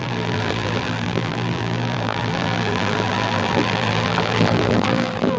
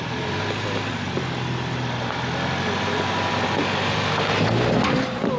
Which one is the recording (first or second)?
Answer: second